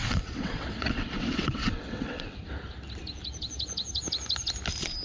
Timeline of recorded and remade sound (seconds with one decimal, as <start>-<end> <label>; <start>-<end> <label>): 0.0-2.5 remade; 2.5-5.0 recorded